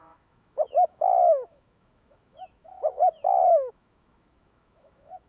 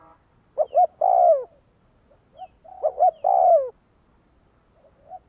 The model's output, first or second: first